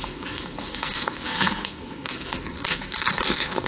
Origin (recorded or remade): remade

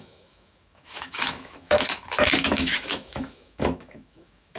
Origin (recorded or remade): remade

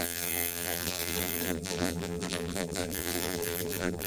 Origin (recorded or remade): remade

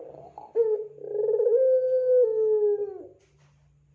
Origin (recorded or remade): recorded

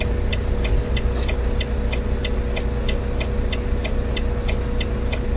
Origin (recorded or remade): recorded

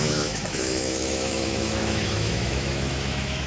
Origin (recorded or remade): remade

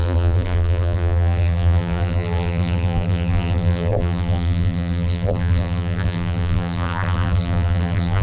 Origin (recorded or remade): remade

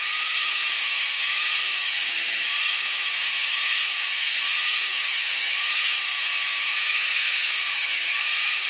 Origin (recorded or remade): remade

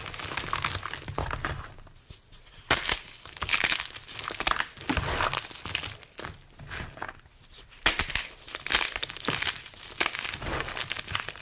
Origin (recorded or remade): recorded